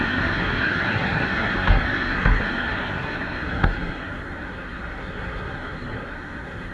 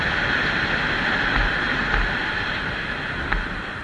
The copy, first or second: first